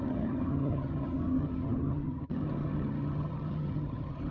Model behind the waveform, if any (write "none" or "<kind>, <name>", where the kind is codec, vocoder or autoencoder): vocoder, HiFi-GAN